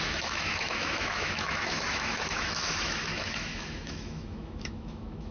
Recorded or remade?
remade